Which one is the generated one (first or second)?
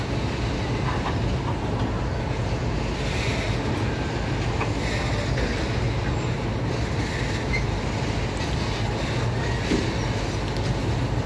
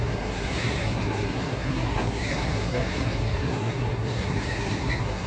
second